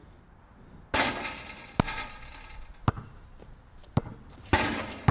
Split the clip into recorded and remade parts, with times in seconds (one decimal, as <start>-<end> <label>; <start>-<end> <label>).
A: 0.0-5.1 recorded